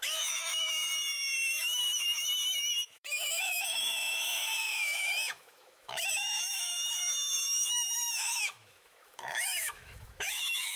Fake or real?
fake